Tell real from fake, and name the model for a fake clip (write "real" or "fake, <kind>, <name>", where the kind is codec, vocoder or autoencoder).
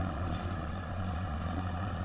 fake, vocoder, Vocos